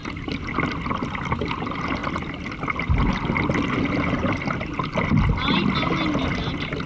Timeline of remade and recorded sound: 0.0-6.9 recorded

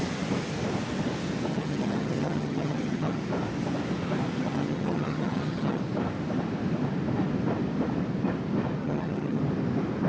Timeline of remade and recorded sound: 0.0-1.5 recorded; 1.5-3.2 remade; 3.2-4.4 recorded; 4.4-5.8 remade; 5.8-8.8 recorded; 8.8-9.4 remade; 9.4-10.1 recorded

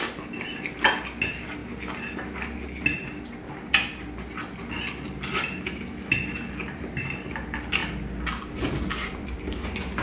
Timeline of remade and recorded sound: 0.0-10.0 recorded

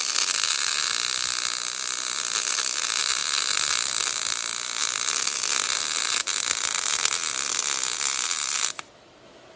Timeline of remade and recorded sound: 0.0-9.6 recorded

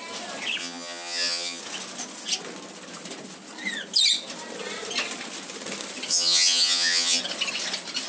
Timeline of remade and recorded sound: 0.0-0.6 recorded; 0.6-1.6 remade; 1.6-6.1 recorded; 6.1-7.2 remade; 7.2-8.1 recorded